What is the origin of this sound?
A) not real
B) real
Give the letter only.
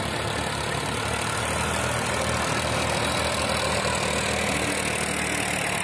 B